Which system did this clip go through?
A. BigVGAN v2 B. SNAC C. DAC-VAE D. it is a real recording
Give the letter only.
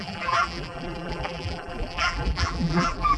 A